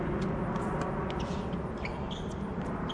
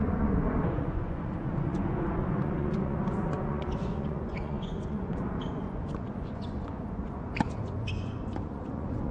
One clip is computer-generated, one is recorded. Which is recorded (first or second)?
first